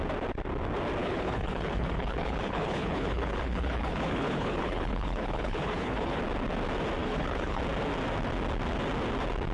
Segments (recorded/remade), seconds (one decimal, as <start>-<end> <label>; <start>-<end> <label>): 0.0-1.0 recorded; 1.0-6.2 remade; 6.2-7.0 recorded; 7.0-7.6 remade; 7.6-9.5 recorded